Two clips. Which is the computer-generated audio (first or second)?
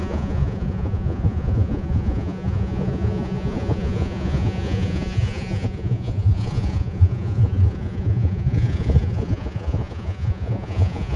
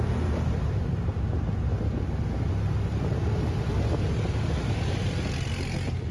first